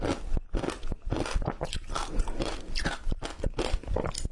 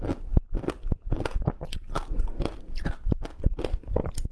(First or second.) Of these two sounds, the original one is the first